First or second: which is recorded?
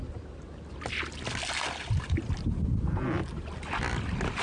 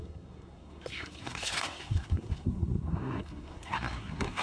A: first